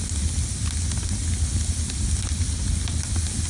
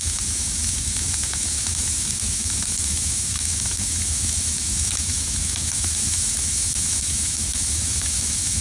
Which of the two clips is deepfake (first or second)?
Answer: second